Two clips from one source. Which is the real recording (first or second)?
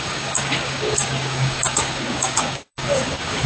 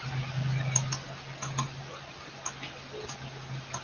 second